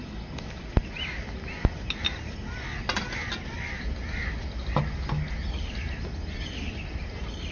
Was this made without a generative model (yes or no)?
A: yes